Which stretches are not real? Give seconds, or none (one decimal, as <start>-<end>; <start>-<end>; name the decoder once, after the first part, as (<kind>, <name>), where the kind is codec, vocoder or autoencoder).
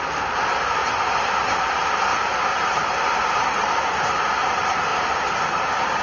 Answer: none